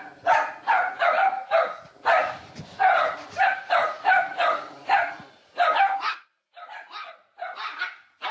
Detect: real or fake real